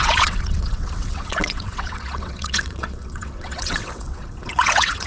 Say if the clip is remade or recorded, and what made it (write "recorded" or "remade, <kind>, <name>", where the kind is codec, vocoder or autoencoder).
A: remade, vocoder, WaveNeXt